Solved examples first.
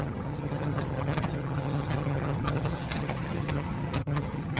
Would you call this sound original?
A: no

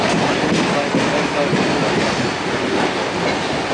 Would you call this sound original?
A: yes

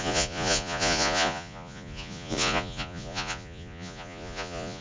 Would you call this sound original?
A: no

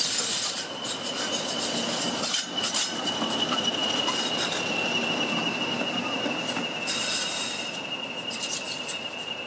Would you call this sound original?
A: yes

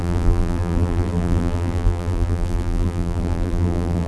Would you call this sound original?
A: no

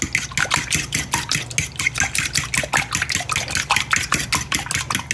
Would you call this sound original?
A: yes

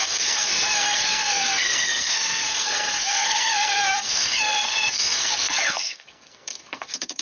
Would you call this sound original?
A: no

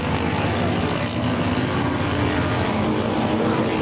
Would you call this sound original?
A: yes